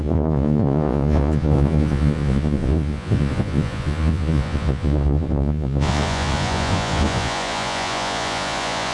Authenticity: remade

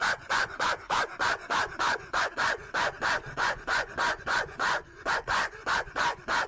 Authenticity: remade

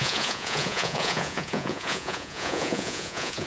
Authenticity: remade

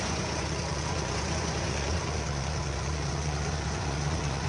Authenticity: remade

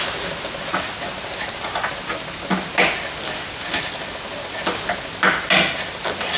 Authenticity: recorded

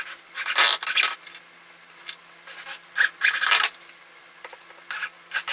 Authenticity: recorded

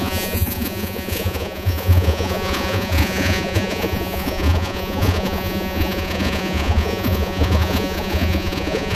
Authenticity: remade